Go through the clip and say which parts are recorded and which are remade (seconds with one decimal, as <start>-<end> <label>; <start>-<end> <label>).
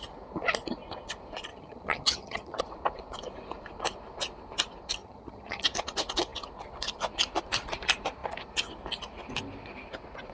0.0-1.5 recorded; 1.5-2.6 remade; 2.6-5.0 recorded; 5.0-5.6 remade; 5.6-10.3 recorded